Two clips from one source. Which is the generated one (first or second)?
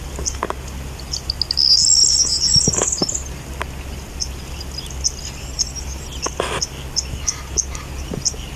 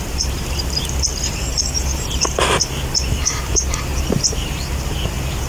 second